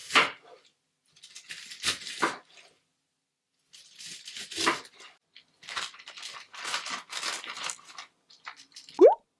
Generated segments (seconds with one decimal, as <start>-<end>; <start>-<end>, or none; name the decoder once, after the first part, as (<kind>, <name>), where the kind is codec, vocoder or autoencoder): none